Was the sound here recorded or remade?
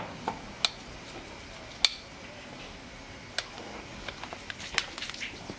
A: recorded